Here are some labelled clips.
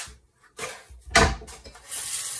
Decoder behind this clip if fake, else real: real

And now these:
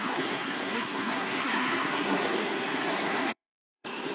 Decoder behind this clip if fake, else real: fake, codec, SNAC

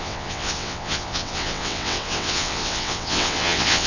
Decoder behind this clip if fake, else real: fake, vocoder, WaveNeXt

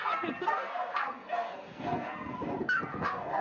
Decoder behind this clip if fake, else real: fake, codec, SNAC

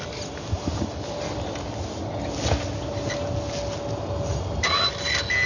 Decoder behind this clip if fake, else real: real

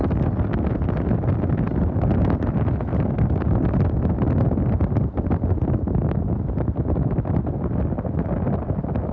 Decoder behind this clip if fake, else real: real